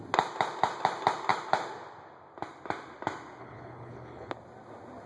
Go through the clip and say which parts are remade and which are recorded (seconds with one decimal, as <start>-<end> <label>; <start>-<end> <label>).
0.0-3.4 recorded; 3.4-4.3 remade; 4.3-5.1 recorded